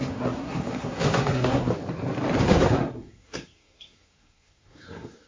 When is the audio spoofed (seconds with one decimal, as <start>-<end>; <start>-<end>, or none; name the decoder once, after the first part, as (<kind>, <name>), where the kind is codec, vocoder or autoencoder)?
0.0-1.7 (codec, SNAC); 2.4-5.3